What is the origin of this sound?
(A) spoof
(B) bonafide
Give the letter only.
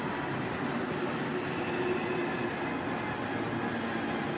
B